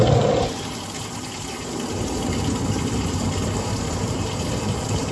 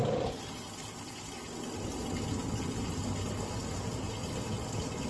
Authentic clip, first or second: second